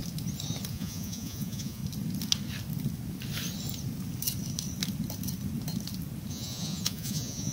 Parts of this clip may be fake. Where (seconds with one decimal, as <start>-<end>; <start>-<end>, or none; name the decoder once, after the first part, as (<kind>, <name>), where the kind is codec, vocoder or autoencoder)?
0.7-1.8 (vocoder, Vocos); 6.3-7.5